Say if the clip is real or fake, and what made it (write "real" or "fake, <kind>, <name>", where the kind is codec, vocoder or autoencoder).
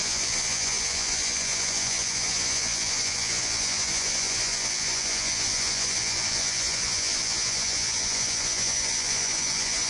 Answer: fake, vocoder, Vocos